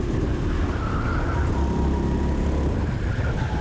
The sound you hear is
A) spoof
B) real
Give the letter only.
B